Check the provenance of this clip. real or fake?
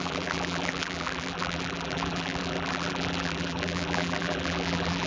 fake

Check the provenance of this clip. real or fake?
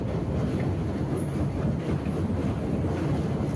real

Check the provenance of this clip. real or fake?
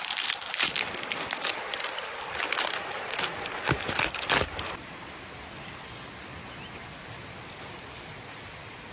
real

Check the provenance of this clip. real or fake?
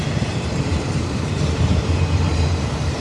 fake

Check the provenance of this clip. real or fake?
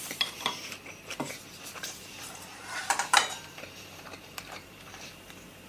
fake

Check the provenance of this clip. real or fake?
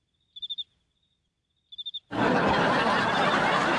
real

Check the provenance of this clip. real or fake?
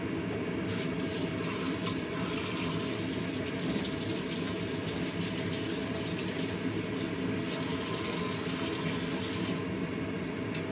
real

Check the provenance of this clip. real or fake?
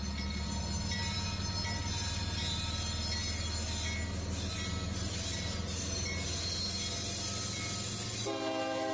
real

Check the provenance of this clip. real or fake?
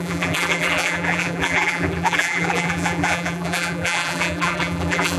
fake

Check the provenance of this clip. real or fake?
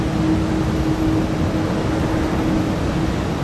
real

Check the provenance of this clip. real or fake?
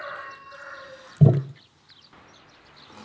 real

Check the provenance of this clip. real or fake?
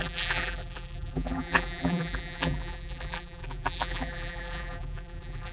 fake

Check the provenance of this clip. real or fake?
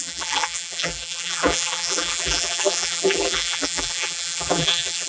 fake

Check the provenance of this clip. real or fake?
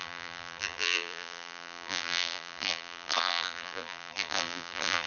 fake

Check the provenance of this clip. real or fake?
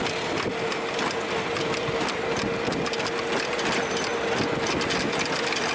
real